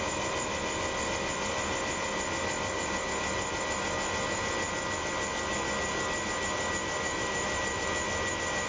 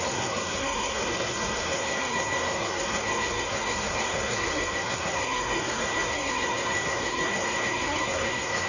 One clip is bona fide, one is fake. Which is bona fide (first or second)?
first